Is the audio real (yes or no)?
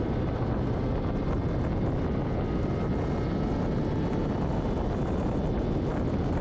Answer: yes